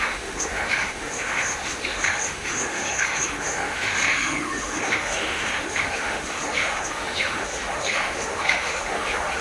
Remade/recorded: remade